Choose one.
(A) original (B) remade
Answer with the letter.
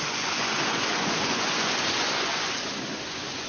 B